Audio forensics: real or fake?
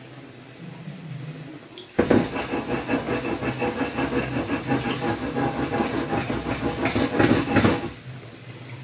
real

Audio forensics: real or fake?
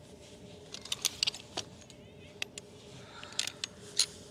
real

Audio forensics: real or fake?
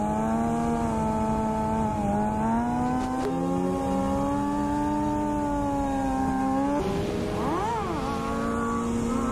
real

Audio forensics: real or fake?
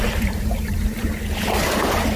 fake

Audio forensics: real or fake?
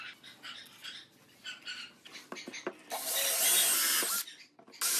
real